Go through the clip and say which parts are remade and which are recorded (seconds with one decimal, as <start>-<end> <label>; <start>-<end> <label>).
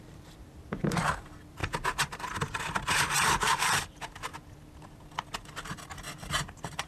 0.0-1.6 remade; 1.6-3.4 recorded; 3.4-4.3 remade; 4.3-6.9 recorded